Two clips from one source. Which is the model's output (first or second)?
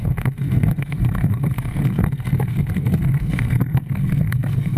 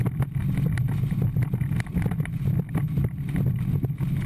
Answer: first